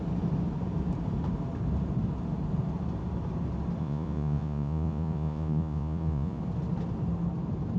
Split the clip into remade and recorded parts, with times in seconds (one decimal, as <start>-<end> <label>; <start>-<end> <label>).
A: 0.0-3.8 recorded; 3.8-6.4 remade; 6.4-7.8 recorded